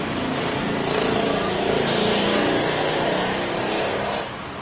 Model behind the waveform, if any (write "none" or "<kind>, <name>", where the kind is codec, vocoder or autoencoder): none